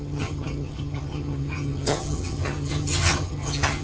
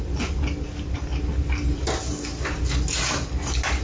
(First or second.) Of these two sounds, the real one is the second